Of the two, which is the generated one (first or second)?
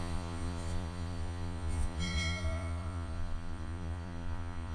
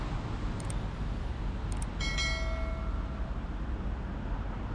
first